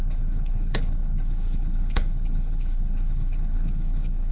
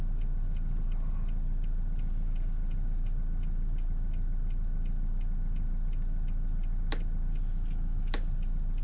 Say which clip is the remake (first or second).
first